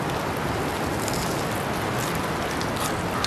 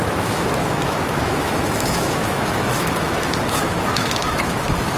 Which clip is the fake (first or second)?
second